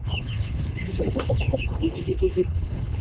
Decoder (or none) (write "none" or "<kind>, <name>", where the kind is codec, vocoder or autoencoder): codec, HILCodec